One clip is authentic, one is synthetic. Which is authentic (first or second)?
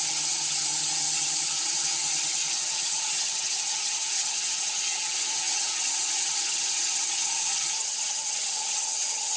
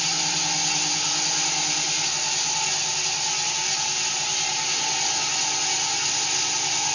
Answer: second